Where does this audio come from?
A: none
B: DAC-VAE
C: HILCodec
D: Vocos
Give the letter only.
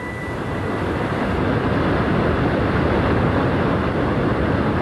A